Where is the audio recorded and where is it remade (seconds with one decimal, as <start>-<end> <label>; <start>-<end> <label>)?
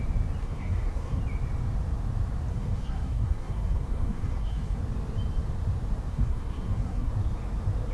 0.0-0.4 recorded; 0.4-1.2 remade; 1.2-2.5 recorded; 2.5-4.8 remade; 4.8-6.1 recorded; 6.1-7.1 remade; 7.1-7.9 recorded